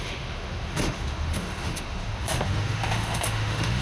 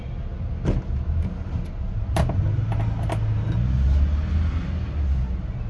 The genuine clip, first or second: second